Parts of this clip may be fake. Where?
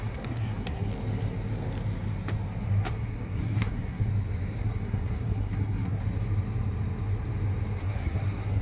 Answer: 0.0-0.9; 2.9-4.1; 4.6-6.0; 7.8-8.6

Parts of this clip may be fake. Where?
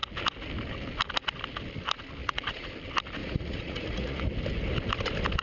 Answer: 2.2-2.7; 3.2-4.3